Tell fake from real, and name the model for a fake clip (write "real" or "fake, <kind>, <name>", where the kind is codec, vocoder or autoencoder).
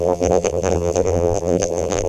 fake, vocoder, BigVGAN v2